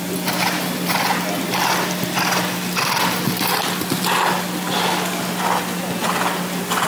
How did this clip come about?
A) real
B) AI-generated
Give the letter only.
A